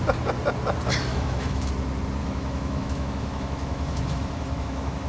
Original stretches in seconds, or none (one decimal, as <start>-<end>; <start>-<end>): 0.0-1.1; 1.7-2.2